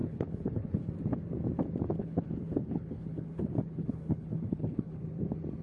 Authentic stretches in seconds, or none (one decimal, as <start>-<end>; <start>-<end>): 0.9-2.0; 5.0-5.6